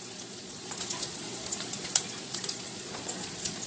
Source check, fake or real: fake